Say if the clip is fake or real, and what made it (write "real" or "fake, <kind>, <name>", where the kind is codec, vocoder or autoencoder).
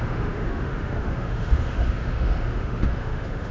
fake, autoencoder, DAC-VAE